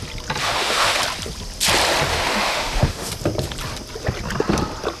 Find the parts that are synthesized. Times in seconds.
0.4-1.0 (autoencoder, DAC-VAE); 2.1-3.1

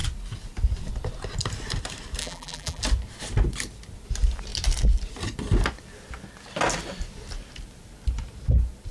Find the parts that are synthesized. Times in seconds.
2.2-2.8 (vocoder, BigVGAN v2)

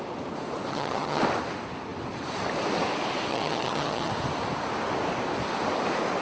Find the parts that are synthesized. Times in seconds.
0.7-1.2 (vocoder, HiFi-GAN); 3.3-4.1

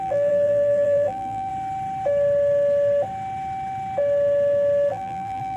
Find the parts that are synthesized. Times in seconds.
0.0-1.5 (vocoder, BigVGAN v2); 4.9-5.6

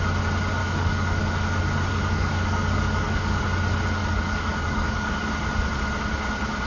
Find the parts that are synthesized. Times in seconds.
0.6-1.3 (codec, DAC); 1.9-3.4; 4.0-5.3